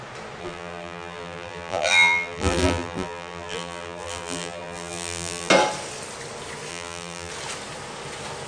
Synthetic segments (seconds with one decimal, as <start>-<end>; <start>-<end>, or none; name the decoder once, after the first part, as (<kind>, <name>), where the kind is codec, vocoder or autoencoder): 0.4-5.5 (vocoder, BigVGAN v2); 6.7-7.3